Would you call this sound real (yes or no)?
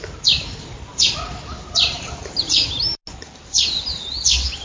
yes